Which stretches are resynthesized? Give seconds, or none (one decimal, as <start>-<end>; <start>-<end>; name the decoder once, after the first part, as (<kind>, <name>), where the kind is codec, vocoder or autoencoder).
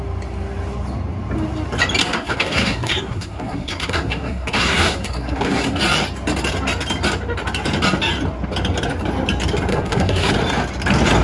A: 2.0-5.8 (codec, SNAC); 9.7-10.3